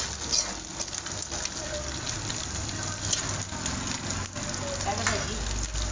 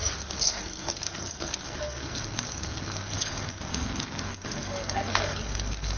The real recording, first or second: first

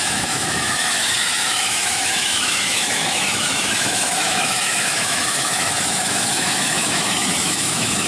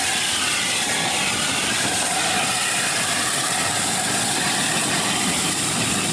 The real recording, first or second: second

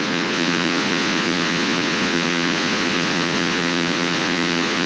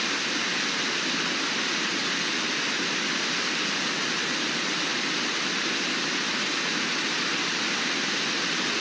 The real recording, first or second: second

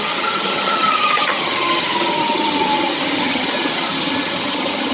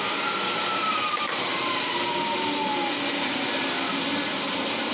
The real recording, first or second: second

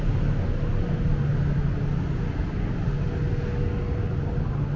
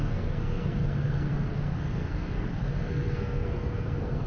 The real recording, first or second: first